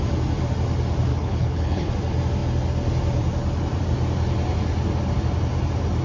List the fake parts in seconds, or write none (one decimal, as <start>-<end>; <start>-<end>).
1.1-1.9